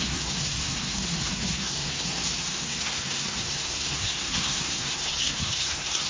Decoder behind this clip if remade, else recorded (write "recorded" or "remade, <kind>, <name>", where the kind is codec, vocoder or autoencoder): remade, codec, SNAC